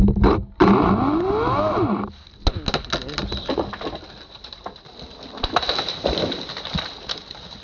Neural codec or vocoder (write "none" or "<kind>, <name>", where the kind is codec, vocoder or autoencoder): none